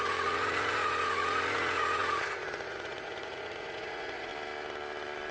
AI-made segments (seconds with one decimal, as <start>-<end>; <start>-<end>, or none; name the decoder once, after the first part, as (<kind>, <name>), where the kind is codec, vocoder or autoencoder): 0.0-4.3 (vocoder, Vocos)